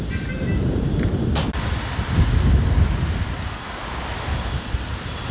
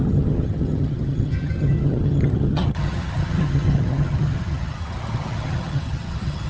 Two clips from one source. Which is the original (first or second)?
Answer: first